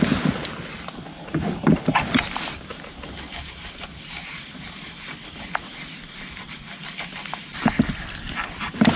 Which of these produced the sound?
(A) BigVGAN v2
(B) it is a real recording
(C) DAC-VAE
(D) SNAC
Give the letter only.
B